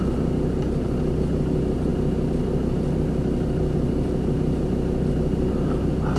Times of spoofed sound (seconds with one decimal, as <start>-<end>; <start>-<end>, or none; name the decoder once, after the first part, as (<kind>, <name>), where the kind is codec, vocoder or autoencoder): none